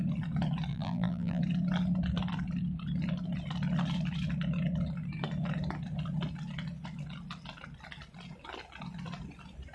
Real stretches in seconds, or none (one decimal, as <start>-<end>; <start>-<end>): 0.0-0.7; 1.4-9.7